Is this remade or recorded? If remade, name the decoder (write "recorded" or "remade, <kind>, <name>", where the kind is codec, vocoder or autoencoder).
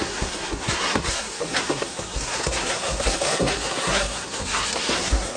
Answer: remade, codec, SNAC